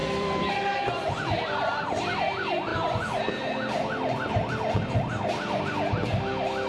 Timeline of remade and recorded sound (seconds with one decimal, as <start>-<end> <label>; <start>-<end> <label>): 0.0-0.6 remade; 0.6-6.7 recorded